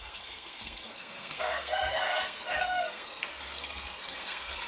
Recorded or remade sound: remade